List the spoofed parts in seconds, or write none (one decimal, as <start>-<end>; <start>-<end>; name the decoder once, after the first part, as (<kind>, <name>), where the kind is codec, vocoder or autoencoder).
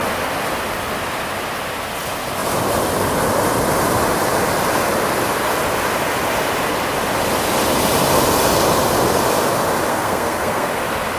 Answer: 9.9-10.7 (codec, SNAC)